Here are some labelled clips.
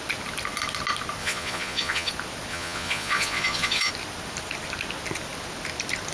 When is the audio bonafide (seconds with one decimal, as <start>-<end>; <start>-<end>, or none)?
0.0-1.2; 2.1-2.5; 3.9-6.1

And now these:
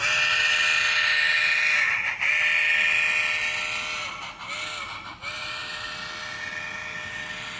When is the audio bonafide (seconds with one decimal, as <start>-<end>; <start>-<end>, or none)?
0.0-7.6

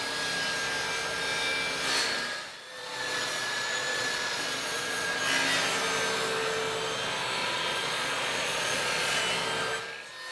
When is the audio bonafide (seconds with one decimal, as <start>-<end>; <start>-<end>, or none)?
0.0-2.8; 5.2-7.4; 9.2-10.3

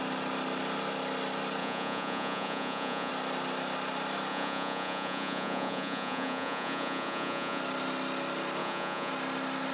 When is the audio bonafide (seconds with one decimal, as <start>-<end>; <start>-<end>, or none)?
0.0-1.6; 3.1-4.3; 7.6-8.6; 9.1-9.7

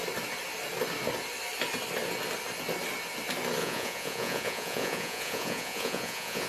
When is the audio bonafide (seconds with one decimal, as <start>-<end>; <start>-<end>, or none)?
0.0-3.6

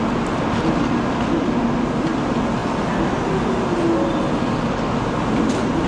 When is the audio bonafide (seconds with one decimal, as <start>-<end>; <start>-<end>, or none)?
0.0-5.9

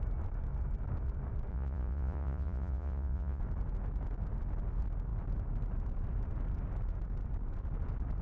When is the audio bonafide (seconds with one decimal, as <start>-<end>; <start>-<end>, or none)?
0.0-1.5; 3.4-8.2

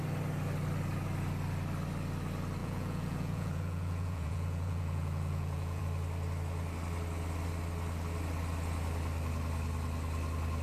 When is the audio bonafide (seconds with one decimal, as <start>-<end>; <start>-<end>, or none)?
0.0-2.6; 5.8-10.6